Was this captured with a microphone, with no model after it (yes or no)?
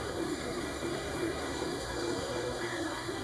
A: no